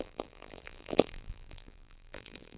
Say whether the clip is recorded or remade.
remade